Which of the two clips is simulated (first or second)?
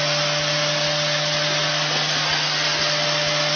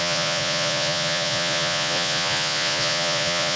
second